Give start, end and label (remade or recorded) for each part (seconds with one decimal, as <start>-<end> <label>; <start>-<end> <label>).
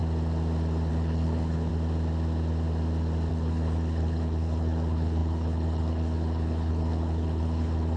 0.0-0.9 recorded; 0.9-1.7 remade; 1.7-3.3 recorded; 3.3-8.0 remade